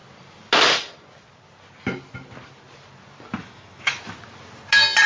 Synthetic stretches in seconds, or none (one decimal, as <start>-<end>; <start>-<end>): 3.4-4.0